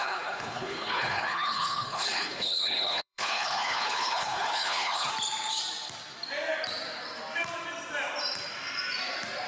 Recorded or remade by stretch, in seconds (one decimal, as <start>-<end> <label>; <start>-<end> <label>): 0.0-5.1 remade; 5.1-9.5 recorded